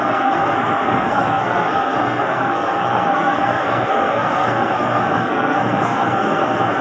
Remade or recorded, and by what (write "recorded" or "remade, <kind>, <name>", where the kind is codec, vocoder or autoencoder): remade, codec, SNAC